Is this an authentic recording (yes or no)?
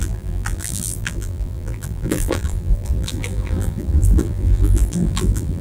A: no